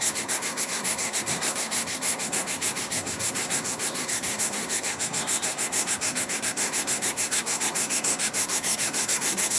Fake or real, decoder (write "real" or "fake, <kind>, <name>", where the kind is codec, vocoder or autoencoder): fake, codec, SNAC